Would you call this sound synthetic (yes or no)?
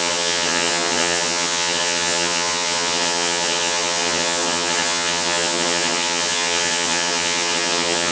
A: yes